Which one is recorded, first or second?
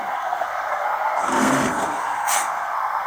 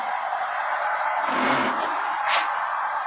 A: second